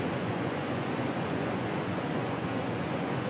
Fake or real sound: fake